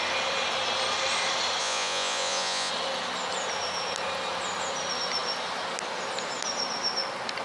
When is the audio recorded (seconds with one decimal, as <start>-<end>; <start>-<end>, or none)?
0.0-1.6; 2.7-7.4